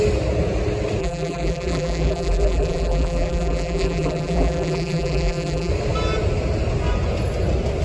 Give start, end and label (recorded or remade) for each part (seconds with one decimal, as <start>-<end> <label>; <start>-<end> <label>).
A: 0.0-1.0 recorded; 1.0-5.7 remade; 5.7-7.8 recorded